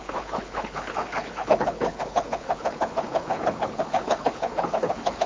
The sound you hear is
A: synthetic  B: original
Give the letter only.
A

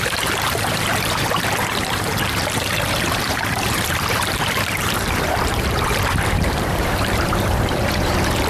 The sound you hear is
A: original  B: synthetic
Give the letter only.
B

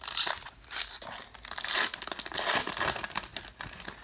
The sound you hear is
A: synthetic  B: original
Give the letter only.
B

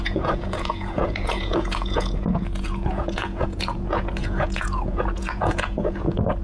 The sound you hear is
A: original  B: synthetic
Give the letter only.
B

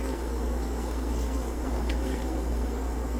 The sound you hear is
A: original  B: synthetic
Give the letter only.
B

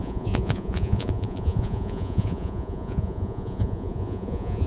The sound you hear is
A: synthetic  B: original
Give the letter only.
A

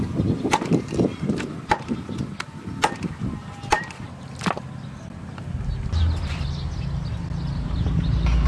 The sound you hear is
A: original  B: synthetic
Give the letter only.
A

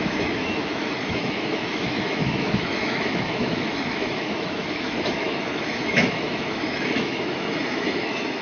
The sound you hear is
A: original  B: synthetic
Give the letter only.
B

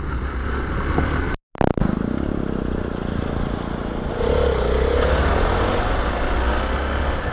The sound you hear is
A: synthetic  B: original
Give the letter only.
B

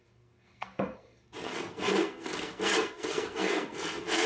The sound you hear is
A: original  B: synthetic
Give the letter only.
B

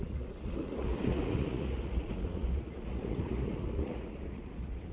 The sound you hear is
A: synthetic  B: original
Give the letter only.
A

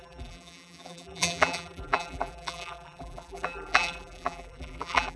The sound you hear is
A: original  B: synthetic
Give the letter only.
B